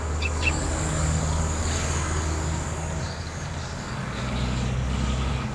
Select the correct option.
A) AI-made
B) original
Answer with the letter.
A